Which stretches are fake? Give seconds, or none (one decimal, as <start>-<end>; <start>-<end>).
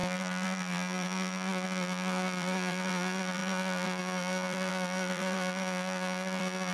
0.0-6.7